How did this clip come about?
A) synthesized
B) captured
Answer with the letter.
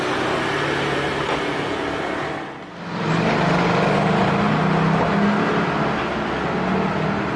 B